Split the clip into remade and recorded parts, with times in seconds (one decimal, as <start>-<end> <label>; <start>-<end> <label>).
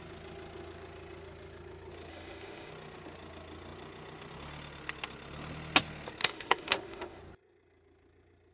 0.0-2.1 recorded; 2.1-2.7 remade; 2.7-6.2 recorded; 6.2-7.2 remade; 7.2-8.5 recorded